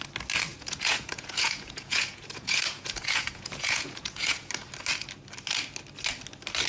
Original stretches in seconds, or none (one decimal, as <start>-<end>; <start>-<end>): 0.0-0.5; 4.5-6.7